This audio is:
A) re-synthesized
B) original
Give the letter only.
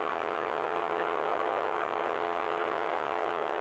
A